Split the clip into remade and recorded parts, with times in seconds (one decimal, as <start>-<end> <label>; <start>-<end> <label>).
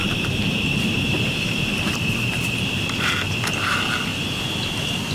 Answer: 0.0-3.1 remade; 3.1-5.1 recorded